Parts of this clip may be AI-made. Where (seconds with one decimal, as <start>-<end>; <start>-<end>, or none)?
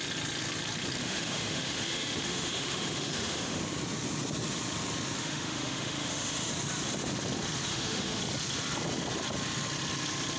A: 1.0-3.6; 5.2-6.5; 7.7-8.2